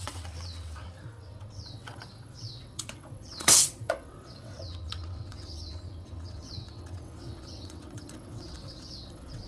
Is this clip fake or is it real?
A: fake